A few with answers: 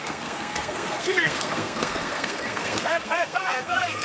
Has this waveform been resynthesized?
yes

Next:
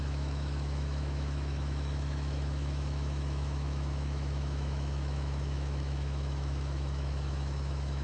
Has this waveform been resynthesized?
yes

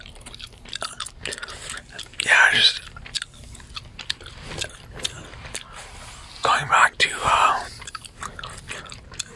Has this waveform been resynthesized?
no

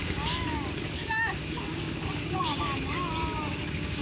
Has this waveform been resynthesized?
yes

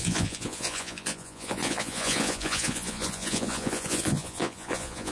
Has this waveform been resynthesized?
yes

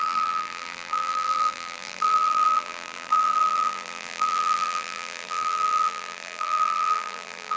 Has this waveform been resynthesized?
yes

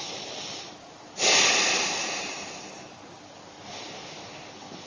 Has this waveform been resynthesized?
no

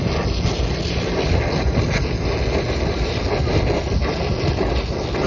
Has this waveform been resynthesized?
no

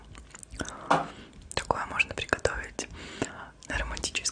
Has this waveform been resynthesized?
no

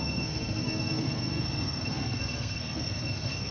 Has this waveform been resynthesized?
yes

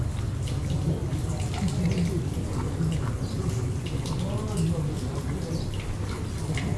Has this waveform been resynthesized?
no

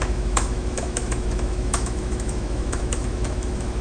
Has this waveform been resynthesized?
yes